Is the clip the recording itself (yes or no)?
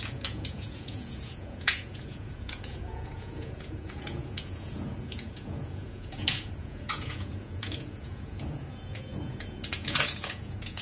no